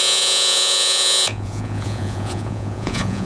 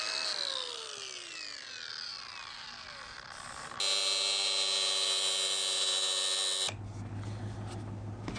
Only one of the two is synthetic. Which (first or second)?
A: first